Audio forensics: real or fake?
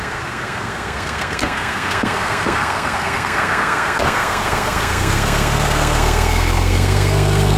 fake